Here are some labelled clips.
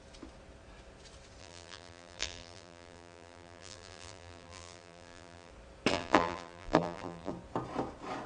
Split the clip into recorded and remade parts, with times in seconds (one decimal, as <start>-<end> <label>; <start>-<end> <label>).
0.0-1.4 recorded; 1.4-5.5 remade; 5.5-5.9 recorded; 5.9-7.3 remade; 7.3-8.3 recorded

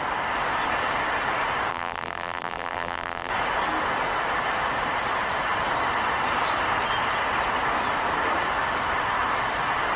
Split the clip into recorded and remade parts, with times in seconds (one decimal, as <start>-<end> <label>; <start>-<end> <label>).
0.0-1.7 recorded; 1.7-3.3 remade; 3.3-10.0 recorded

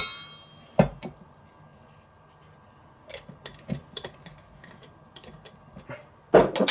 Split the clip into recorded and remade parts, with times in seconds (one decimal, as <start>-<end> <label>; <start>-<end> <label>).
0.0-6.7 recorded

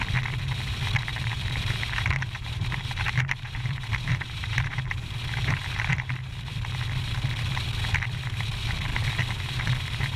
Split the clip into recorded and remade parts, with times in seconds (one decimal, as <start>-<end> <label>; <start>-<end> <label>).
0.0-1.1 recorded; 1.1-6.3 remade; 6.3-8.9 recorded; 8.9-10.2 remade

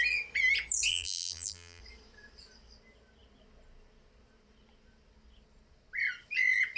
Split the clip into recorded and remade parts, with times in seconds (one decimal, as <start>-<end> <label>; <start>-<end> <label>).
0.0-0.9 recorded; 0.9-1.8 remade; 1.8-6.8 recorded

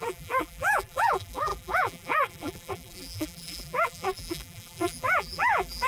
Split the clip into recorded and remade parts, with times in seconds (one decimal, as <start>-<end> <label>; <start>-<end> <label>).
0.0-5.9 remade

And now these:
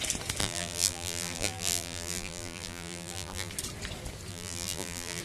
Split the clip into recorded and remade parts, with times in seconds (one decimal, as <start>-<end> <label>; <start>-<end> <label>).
0.0-0.4 recorded; 0.4-3.5 remade; 3.5-4.3 recorded; 4.3-5.2 remade